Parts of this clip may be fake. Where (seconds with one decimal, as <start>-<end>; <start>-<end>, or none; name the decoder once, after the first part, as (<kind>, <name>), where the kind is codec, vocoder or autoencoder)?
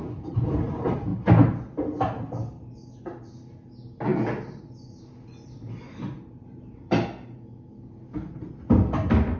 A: none